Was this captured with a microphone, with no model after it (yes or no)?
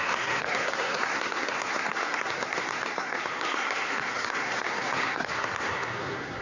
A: no